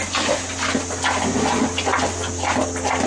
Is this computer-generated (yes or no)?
no